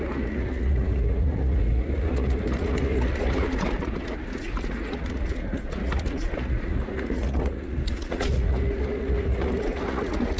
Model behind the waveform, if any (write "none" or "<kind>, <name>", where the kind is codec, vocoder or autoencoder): vocoder, Vocos